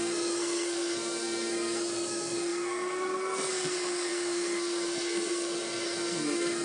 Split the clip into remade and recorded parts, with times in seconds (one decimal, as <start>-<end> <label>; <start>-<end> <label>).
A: 0.0-6.6 remade